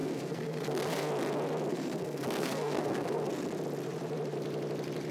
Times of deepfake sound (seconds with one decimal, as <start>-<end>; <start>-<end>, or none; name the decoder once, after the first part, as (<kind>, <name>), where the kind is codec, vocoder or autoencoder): 0.0-1.1 (codec, SNAC); 1.7-3.3